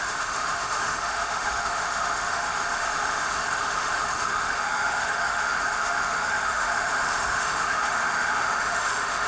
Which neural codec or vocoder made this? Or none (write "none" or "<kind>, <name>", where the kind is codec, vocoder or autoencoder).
autoencoder, DAC-VAE